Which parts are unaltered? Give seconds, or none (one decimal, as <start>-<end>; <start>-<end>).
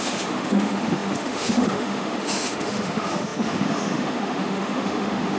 none